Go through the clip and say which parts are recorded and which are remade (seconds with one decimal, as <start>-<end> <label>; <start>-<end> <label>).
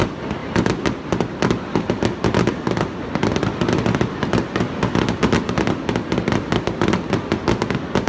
0.0-0.4 recorded; 0.4-1.8 remade; 1.8-8.1 recorded